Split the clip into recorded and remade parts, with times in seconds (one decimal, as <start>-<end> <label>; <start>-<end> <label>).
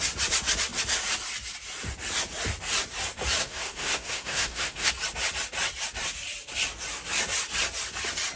0.0-3.4 recorded; 3.4-4.9 remade; 4.9-8.4 recorded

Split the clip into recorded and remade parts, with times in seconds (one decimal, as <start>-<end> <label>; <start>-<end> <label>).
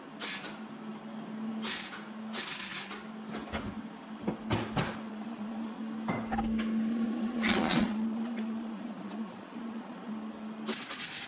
0.0-5.1 recorded; 5.1-5.8 remade; 5.8-6.9 recorded; 6.9-10.1 remade; 10.1-11.3 recorded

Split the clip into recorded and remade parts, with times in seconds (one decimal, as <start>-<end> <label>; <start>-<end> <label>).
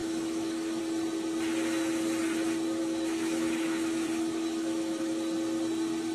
0.0-0.8 remade; 0.8-2.8 recorded; 2.8-5.1 remade; 5.1-6.1 recorded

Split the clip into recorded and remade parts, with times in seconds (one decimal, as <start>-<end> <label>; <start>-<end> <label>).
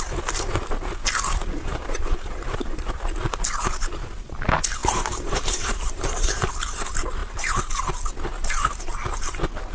0.0-1.7 recorded; 1.7-3.1 remade; 3.1-4.8 recorded; 4.8-6.5 remade; 6.5-7.2 recorded; 7.2-7.7 remade; 7.7-9.7 recorded